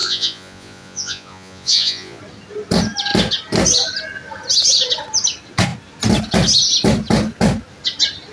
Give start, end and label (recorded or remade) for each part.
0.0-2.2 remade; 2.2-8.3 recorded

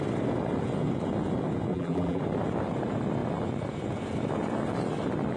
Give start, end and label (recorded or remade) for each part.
0.0-1.7 recorded; 1.7-2.2 remade; 2.2-5.4 recorded

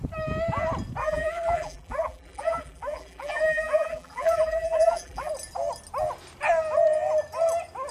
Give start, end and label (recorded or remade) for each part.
0.0-1.0 recorded; 1.0-5.3 remade; 5.3-7.9 recorded